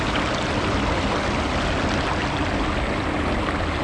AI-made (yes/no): no